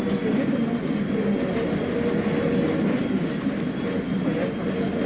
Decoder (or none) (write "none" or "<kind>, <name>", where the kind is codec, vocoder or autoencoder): none